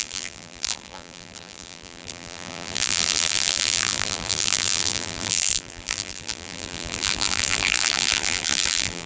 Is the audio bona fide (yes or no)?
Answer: no